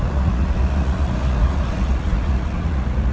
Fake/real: fake